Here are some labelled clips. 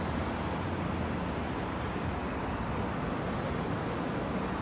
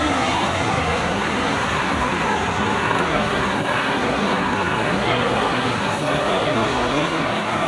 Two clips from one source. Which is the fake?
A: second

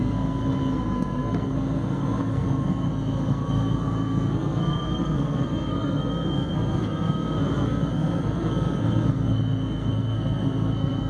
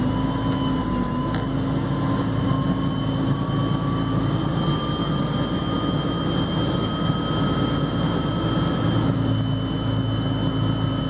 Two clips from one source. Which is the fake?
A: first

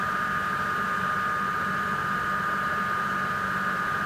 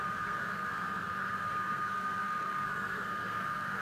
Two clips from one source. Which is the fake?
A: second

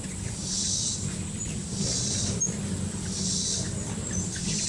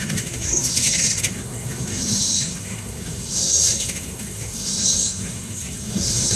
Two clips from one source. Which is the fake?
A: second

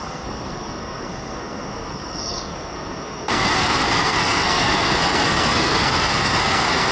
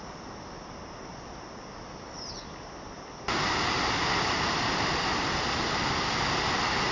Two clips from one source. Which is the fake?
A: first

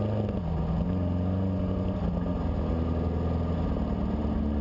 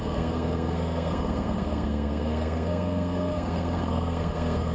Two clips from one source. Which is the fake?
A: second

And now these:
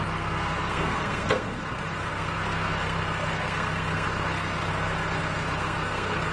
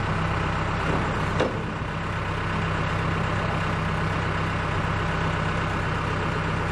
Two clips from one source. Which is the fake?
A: first